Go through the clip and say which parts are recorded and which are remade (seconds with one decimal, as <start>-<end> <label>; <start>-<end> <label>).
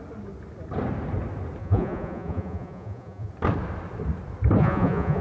0.0-1.6 recorded; 1.6-3.3 remade; 3.3-4.6 recorded; 4.6-5.2 remade